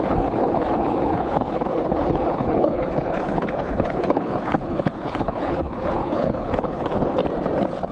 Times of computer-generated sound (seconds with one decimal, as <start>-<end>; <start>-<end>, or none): 0.0-7.2